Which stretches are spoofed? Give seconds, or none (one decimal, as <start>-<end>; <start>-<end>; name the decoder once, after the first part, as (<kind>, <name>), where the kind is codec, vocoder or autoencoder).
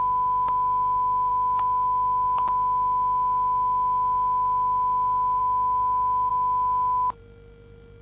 none